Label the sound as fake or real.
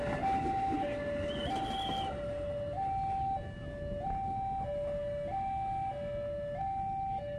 real